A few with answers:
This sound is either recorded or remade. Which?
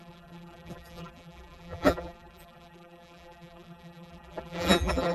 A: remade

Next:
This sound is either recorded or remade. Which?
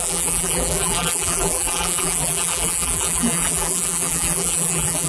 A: remade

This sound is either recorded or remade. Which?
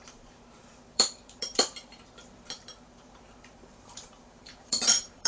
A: remade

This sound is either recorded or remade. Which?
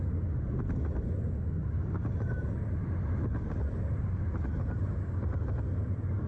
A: recorded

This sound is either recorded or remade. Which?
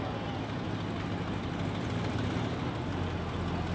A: recorded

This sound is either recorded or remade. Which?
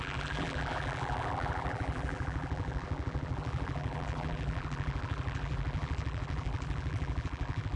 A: remade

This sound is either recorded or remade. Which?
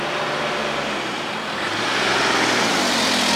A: recorded